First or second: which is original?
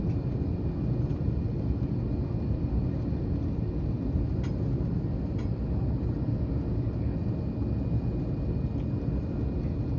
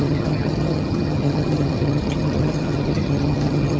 first